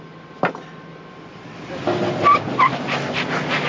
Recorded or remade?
recorded